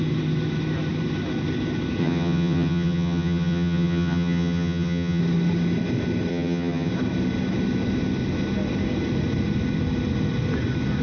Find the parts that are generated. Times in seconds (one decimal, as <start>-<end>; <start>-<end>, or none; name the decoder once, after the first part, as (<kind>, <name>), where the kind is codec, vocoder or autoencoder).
2.0-5.2 (vocoder, HiFi-GAN); 6.3-6.9